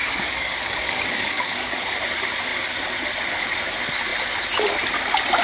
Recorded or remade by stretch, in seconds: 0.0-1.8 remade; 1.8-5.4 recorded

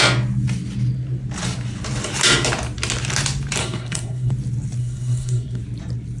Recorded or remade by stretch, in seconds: 0.0-3.6 recorded; 3.6-4.3 remade; 4.3-4.8 recorded; 4.8-5.6 remade; 5.6-6.2 recorded

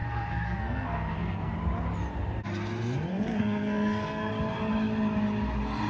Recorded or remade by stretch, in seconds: 0.0-1.5 remade; 1.5-3.1 recorded; 3.1-4.3 remade; 4.3-5.9 recorded

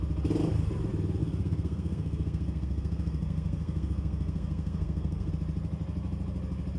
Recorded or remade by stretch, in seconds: 0.0-1.2 recorded; 1.2-5.3 remade; 5.3-6.8 recorded

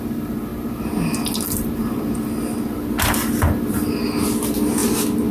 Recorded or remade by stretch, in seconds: 0.0-5.3 recorded

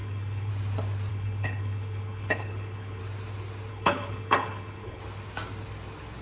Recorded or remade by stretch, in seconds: 0.0-0.5 remade; 0.5-1.1 recorded; 1.1-3.0 remade; 3.0-3.7 recorded; 3.7-5.0 remade; 5.0-6.2 recorded